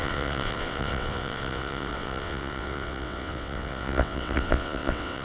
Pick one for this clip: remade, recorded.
remade